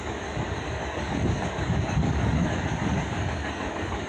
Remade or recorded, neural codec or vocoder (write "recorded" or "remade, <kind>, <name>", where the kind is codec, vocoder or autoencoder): remade, codec, DAC